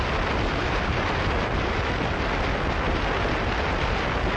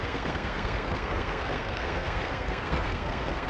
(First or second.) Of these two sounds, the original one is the first